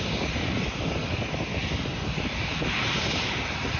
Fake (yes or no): no